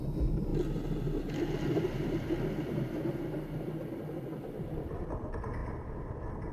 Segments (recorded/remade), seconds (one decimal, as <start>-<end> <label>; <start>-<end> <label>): 0.0-6.5 recorded